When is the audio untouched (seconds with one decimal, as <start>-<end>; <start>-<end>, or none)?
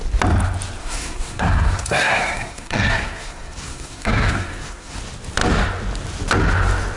0.0-0.8; 5.0-7.0